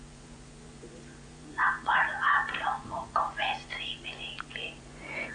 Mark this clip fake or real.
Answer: fake